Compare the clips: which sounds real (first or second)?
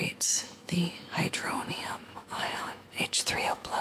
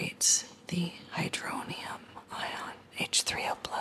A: second